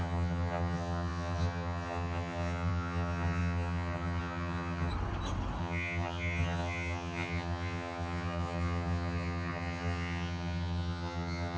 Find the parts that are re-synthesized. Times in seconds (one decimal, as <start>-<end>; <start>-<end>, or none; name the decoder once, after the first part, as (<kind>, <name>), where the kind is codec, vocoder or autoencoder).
0.0-4.9 (vocoder, HiFi-GAN); 5.6-11.6